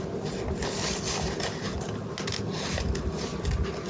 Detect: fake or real real